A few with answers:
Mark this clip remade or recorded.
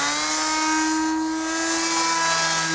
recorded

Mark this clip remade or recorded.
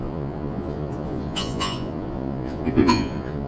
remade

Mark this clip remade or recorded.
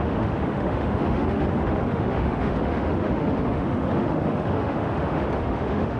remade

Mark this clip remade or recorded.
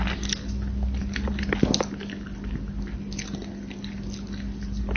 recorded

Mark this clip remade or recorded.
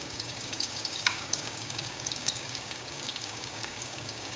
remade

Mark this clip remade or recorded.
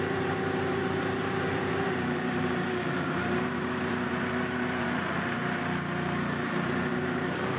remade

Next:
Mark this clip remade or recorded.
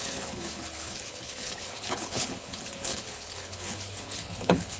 remade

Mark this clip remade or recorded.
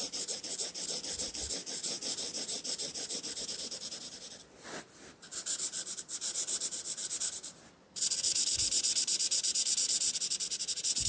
remade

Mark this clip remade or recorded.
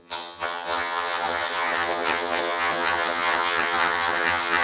remade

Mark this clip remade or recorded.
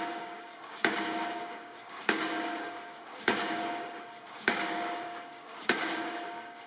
remade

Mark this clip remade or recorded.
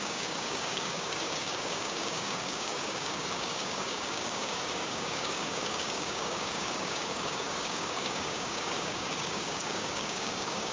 remade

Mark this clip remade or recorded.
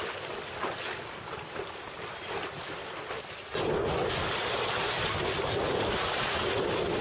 recorded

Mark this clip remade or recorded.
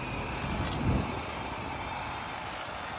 recorded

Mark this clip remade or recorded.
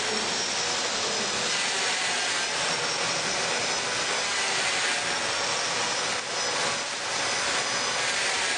recorded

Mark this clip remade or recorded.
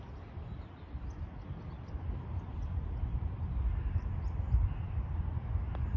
recorded